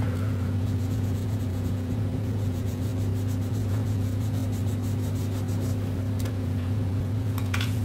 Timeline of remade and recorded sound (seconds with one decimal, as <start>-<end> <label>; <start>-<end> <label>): 0.0-2.9 remade; 2.9-3.5 recorded; 3.5-4.4 remade; 4.4-6.3 recorded; 6.3-7.8 remade